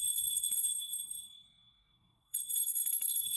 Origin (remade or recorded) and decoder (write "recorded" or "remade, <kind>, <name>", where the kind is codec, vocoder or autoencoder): remade, codec, SNAC